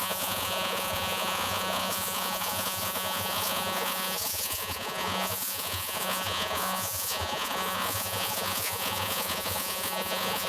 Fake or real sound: fake